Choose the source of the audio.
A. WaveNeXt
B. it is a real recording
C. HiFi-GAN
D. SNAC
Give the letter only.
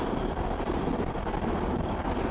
B